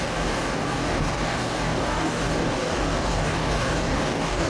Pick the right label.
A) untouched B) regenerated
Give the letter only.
B